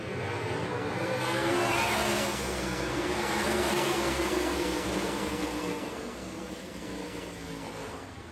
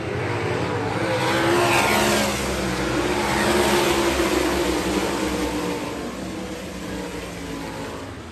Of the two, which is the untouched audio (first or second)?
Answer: second